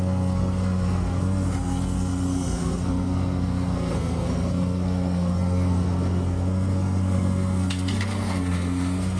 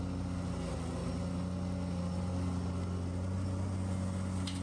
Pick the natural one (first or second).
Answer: second